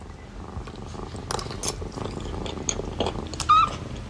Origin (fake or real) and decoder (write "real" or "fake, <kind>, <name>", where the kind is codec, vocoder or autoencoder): real